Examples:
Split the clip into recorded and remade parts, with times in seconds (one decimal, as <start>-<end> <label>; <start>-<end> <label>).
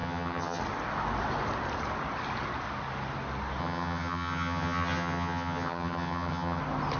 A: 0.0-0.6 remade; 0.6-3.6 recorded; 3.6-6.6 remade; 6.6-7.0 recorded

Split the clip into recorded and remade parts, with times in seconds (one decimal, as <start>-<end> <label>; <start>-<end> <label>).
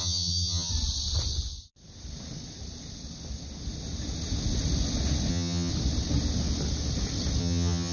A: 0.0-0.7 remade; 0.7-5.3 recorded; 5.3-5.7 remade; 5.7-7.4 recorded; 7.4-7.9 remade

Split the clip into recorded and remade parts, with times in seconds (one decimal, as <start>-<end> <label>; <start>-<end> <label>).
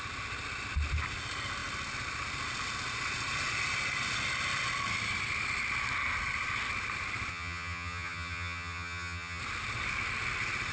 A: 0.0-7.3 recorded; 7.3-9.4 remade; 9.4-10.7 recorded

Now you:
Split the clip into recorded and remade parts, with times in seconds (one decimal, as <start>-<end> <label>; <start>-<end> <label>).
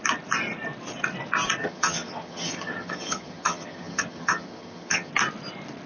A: 0.0-1.6 recorded; 1.6-5.1 remade; 5.1-5.9 recorded